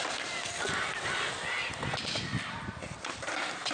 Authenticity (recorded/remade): recorded